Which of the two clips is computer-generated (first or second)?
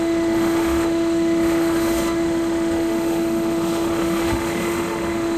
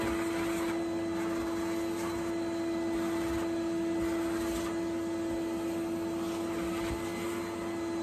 first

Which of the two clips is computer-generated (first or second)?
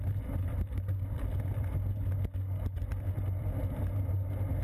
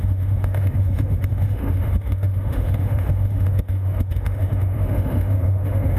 second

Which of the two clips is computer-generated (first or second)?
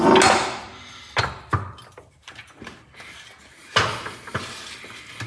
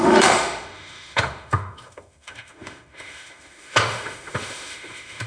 second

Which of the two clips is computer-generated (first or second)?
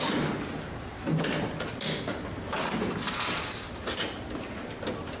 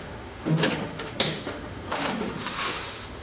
second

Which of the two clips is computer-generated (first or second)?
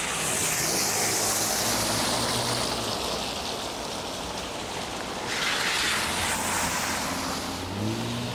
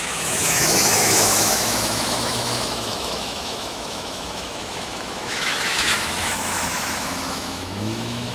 second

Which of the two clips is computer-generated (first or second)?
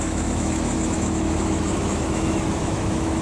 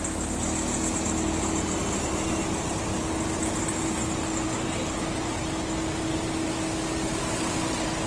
first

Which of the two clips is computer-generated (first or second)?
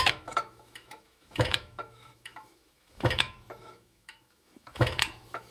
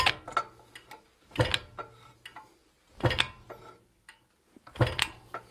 first